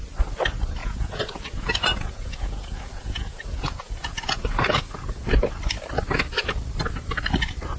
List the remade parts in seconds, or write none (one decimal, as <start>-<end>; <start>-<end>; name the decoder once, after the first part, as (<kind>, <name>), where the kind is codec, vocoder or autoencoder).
0.8-5.5 (vocoder, Vocos)